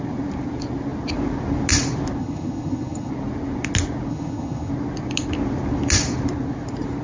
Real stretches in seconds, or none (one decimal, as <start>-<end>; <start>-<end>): 0.0-2.2; 3.1-4.1; 4.7-7.0